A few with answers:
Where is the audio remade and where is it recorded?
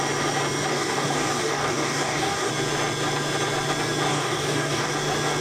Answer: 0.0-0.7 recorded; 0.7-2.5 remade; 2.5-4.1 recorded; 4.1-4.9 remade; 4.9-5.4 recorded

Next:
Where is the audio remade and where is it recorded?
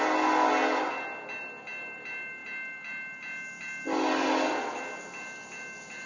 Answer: 0.0-6.1 recorded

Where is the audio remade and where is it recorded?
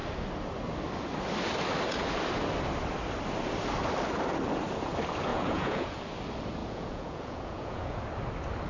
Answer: 0.0-5.3 recorded; 5.3-6.0 remade; 6.0-6.6 recorded; 6.6-8.0 remade; 8.0-8.7 recorded